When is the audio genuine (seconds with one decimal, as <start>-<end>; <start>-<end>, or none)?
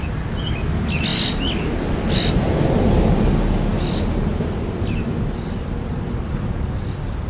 0.0-7.3